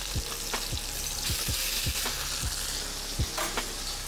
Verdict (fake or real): real